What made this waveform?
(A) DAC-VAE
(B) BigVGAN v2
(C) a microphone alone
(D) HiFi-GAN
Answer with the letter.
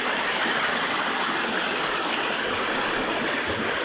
C